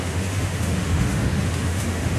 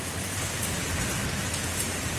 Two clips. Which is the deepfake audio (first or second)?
first